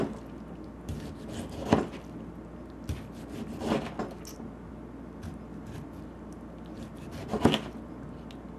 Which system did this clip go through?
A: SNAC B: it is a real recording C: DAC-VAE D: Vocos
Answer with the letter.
B